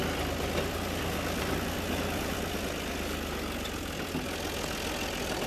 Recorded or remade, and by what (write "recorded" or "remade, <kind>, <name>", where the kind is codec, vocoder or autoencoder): recorded